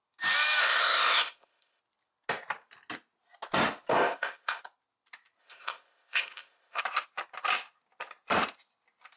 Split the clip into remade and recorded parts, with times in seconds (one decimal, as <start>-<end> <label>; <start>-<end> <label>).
0.0-0.6 recorded; 0.6-1.8 remade; 1.8-3.9 recorded; 3.9-4.6 remade; 4.6-5.4 recorded; 5.4-6.8 remade; 6.8-9.2 recorded